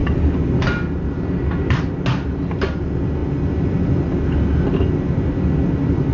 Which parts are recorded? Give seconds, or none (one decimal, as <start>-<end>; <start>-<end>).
0.0-6.1